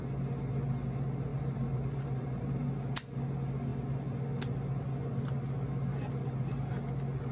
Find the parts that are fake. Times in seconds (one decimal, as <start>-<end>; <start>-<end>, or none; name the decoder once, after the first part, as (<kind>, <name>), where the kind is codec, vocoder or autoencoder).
1.3-2.7 (vocoder, BigVGAN v2); 5.9-6.5